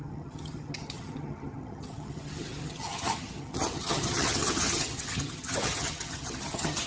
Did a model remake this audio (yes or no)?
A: yes